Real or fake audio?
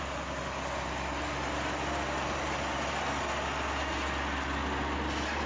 real